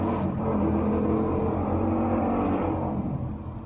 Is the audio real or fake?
real